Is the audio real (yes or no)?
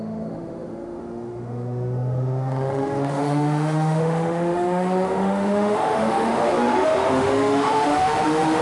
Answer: no